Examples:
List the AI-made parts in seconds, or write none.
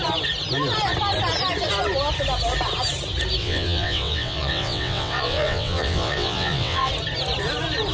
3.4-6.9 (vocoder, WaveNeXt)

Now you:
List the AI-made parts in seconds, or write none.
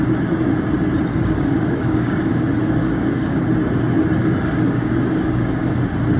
1.1-2.4 (codec, DAC); 2.8-3.4; 4.2-5.8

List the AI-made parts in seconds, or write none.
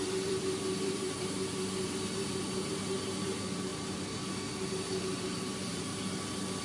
0.0-3.7 (vocoder, BigVGAN v2); 5.0-5.9